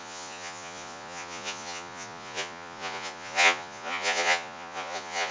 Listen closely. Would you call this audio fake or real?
fake